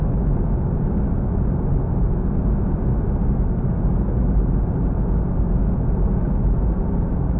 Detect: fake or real real